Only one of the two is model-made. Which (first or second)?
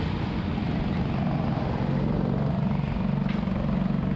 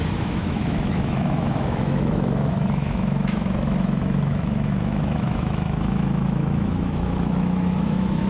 second